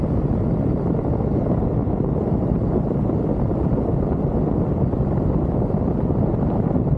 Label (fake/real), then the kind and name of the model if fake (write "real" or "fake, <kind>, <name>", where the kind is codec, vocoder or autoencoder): real